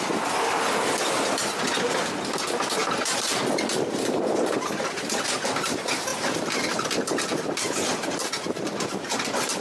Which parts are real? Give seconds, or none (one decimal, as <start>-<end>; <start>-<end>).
0.0-2.8; 3.3-6.1